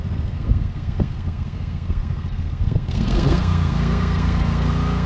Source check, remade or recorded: remade